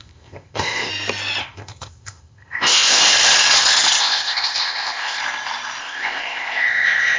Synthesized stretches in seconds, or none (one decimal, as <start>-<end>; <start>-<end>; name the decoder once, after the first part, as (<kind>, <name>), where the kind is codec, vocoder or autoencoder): 0.0-0.9 (codec, ZipCodec); 1.4-3.0; 4.0-5.2; 5.8-7.2